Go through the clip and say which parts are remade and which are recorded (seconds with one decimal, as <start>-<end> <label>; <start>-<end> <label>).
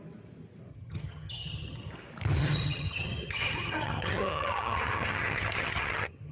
0.0-0.7 recorded; 0.7-1.9 remade; 1.9-2.4 recorded; 2.4-6.3 remade